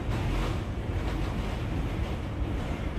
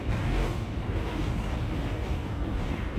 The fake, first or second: second